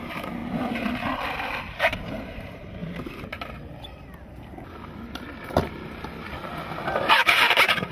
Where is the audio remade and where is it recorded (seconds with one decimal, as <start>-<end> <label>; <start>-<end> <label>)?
0.0-0.4 remade; 0.4-1.6 recorded; 1.6-2.8 remade; 2.8-7.1 recorded; 7.1-7.9 remade

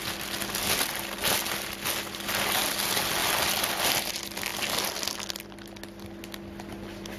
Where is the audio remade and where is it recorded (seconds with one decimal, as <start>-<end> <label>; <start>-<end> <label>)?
0.0-7.2 recorded

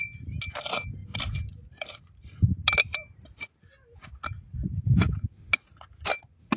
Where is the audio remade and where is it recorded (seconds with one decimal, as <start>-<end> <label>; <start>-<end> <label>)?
0.0-1.0 recorded; 1.0-2.1 remade; 2.1-6.6 recorded

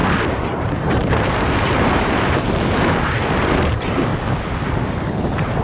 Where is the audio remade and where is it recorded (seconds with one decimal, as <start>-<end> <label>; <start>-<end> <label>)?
0.0-4.1 remade; 4.1-5.1 recorded; 5.1-5.6 remade

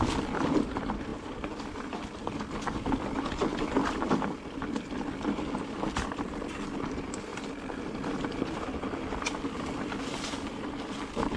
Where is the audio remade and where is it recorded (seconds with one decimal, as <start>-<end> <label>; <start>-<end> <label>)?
0.0-11.4 remade

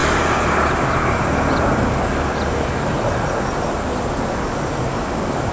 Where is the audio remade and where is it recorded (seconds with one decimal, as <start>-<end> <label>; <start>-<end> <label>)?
0.0-5.5 recorded

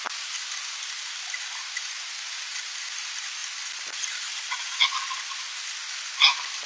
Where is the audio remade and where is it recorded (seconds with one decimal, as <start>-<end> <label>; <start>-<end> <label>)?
0.0-0.7 recorded; 0.7-1.8 remade; 1.8-6.7 recorded